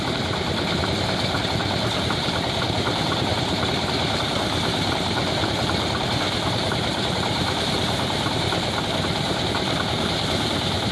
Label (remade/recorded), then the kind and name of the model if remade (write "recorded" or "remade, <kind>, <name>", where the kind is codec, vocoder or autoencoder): remade, vocoder, BigVGAN v2